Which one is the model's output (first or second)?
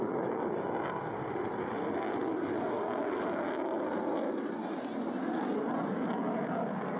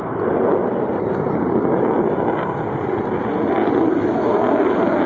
second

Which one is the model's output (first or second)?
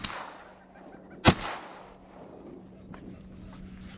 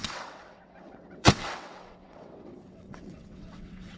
second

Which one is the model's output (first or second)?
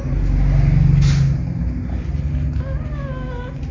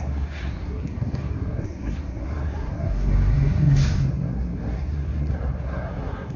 second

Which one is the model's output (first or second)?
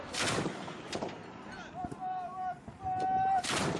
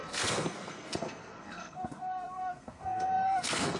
second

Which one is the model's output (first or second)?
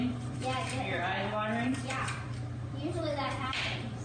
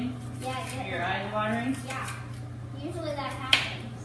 first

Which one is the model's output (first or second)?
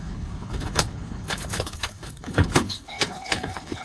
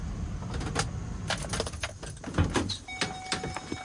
first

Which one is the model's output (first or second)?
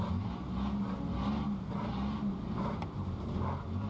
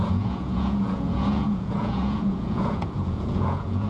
second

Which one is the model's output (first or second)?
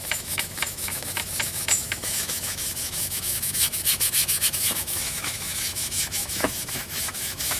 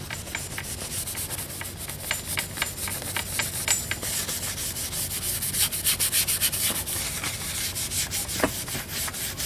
first